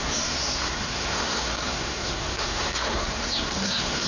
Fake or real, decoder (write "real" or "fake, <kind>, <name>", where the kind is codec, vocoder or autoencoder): fake, codec, SNAC